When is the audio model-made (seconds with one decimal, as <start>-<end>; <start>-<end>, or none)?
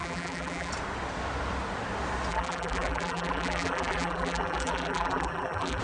0.0-0.7; 2.3-5.8